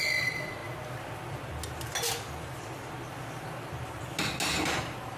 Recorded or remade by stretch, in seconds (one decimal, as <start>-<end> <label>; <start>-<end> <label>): 0.0-5.2 recorded

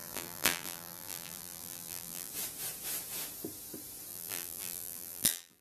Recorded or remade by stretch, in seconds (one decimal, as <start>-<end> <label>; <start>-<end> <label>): 0.0-2.3 remade; 2.3-4.1 recorded; 4.1-5.6 remade

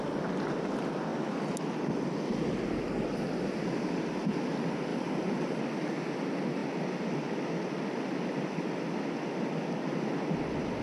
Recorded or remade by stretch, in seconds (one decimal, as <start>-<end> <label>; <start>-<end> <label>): 0.0-4.9 recorded; 4.9-5.6 remade; 5.6-10.8 recorded

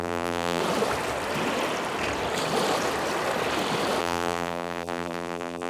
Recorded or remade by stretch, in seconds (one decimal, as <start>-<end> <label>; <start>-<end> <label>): 0.0-0.6 remade; 0.6-4.0 recorded; 4.0-5.7 remade